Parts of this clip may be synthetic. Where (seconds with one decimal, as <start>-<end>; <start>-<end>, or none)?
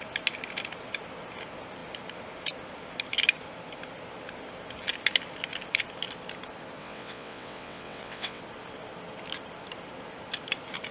6.8-8.4